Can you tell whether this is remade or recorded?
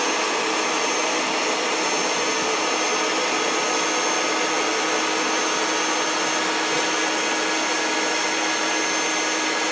recorded